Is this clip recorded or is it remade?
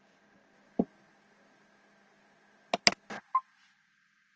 recorded